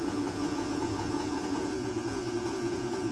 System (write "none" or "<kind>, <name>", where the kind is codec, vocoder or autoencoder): vocoder, Vocos